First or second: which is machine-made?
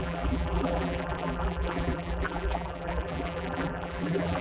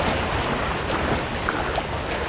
first